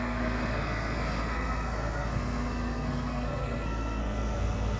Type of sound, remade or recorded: remade